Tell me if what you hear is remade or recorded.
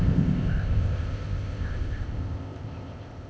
remade